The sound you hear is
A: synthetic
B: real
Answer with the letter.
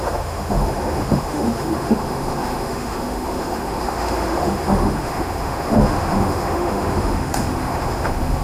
A